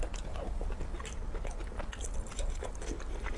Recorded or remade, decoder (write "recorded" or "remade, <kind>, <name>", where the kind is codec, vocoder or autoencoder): recorded